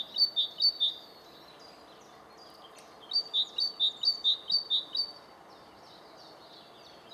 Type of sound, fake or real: real